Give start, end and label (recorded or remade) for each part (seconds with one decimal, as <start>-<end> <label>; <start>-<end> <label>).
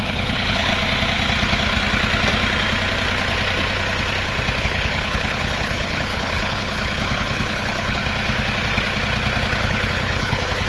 0.0-0.7 remade; 0.7-4.6 recorded; 4.6-8.0 remade; 8.0-9.6 recorded; 9.6-10.7 remade